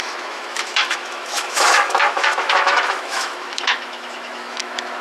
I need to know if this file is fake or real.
fake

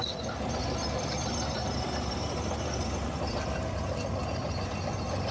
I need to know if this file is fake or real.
fake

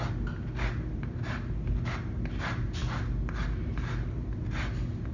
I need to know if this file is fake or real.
real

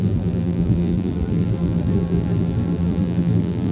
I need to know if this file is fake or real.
fake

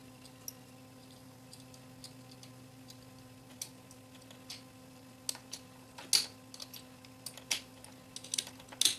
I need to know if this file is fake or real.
real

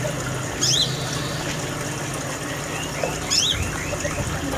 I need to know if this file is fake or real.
real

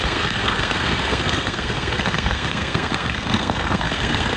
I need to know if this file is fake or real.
fake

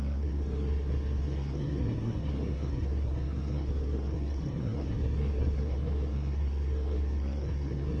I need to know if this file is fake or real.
fake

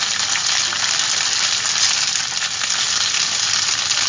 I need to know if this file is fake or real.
real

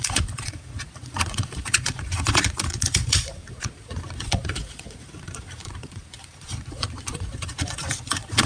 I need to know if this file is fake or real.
fake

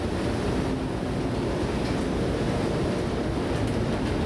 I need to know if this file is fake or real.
real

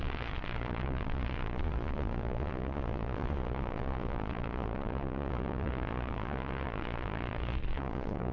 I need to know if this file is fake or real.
fake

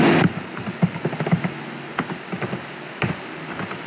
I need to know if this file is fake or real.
real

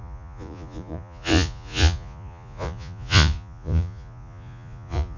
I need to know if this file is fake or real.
fake